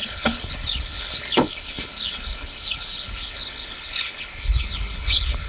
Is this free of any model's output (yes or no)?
no